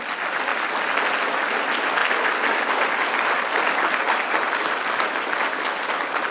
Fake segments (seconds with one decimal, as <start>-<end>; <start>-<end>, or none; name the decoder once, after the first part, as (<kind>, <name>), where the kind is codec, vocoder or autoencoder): none